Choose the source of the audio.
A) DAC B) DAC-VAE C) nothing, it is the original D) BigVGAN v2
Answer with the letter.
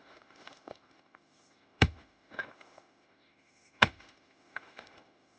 B